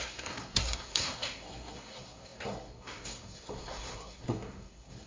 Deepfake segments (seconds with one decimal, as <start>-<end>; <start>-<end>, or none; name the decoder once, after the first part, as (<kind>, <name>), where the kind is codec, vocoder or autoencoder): 0.0-5.1 (codec, SNAC)